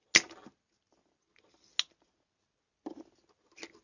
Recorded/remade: recorded